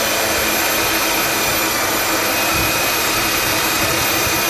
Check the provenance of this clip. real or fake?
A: real